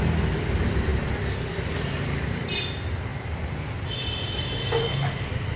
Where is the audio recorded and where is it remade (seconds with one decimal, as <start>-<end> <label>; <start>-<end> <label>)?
0.0-5.6 recorded